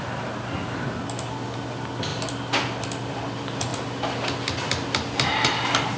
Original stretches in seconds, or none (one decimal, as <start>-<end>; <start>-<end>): 0.0-6.0